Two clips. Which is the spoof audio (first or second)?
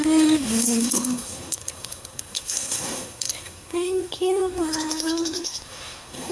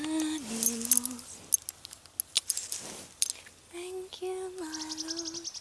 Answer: first